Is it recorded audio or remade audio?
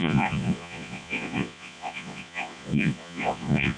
remade